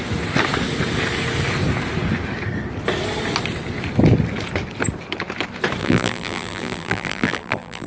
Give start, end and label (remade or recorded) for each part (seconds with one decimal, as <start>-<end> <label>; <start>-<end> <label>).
0.0-5.8 recorded; 5.8-7.9 remade